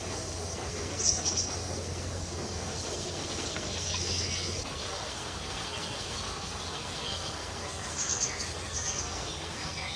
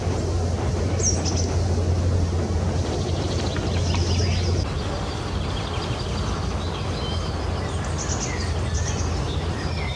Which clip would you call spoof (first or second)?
first